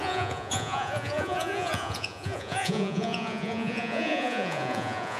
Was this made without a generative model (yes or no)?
no